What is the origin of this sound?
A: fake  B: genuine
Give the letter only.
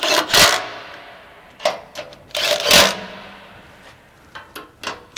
B